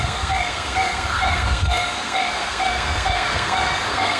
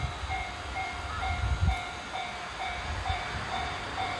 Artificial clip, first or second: first